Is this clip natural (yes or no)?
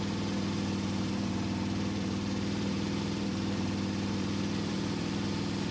no